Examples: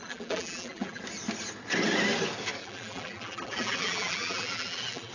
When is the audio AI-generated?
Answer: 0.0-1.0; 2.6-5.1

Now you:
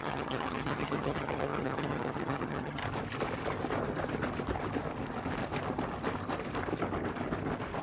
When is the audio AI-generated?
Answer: 0.0-2.8

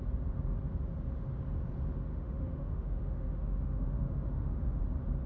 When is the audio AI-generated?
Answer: 2.1-4.8

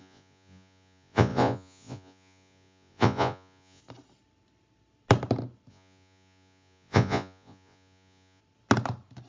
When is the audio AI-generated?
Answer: 0.0-3.8; 5.7-8.4